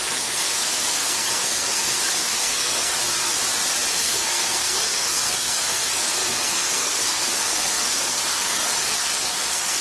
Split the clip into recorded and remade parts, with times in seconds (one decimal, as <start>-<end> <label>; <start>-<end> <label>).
0.0-3.0 remade; 3.0-3.9 recorded; 3.9-9.8 remade